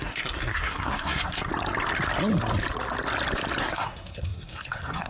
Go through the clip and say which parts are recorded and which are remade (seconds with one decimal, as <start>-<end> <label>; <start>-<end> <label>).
0.0-1.5 remade; 1.5-3.6 recorded; 3.6-5.1 remade